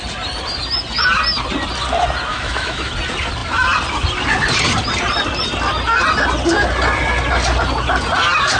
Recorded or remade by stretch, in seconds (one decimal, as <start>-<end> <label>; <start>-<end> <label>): 0.0-2.3 recorded; 2.3-2.9 remade; 2.9-8.6 recorded